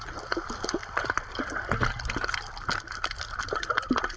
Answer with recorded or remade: recorded